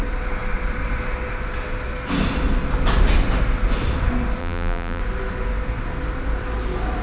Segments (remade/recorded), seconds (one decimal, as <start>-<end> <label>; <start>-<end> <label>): 0.0-4.4 recorded; 4.4-5.0 remade; 5.0-7.0 recorded